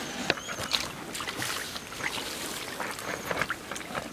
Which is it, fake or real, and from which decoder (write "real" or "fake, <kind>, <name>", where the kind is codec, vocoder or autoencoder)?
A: real